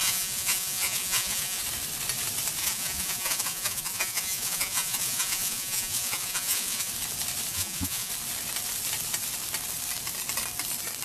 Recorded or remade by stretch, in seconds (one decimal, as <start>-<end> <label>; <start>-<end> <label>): 0.0-1.6 remade; 1.6-2.6 recorded; 2.6-6.9 remade; 6.9-7.5 recorded; 7.5-8.1 remade; 8.1-11.0 recorded